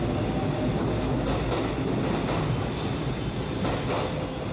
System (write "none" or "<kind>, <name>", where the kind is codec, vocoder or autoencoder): none